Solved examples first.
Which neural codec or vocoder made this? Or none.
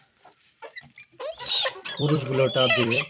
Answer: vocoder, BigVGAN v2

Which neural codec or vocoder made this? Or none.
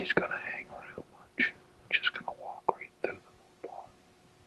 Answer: none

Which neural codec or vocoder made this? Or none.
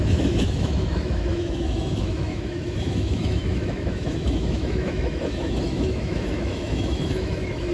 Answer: autoencoder, DAC-VAE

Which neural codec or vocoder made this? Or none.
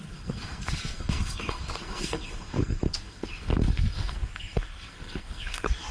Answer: codec, SNAC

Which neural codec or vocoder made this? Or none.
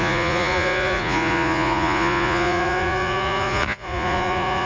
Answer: vocoder, Vocos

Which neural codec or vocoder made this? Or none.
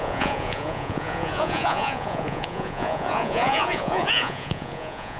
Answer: vocoder, Vocos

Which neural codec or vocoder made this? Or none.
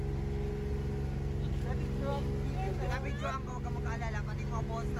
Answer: none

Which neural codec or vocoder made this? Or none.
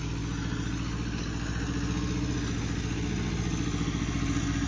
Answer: none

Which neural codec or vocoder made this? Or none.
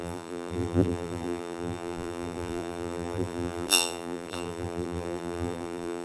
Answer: vocoder, BigVGAN v2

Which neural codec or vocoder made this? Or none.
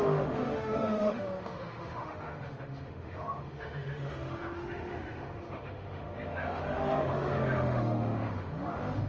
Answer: autoencoder, DAC-VAE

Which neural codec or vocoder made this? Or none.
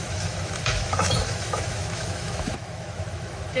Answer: autoencoder, DAC-VAE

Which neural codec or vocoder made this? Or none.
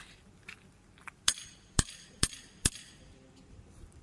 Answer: vocoder, BigVGAN v2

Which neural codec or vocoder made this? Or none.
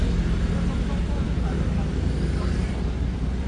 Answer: vocoder, BigVGAN v2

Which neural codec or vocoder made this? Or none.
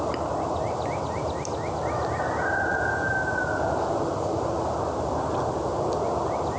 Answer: none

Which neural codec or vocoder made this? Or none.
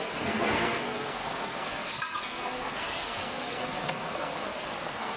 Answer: codec, SNAC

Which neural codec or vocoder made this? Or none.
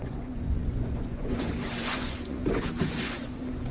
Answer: vocoder, Vocos